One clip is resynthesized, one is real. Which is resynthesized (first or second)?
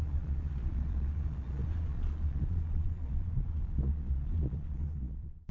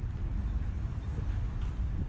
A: first